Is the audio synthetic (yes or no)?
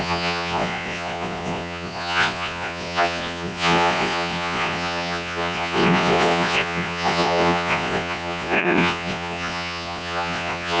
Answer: yes